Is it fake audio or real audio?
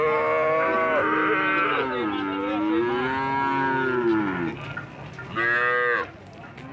real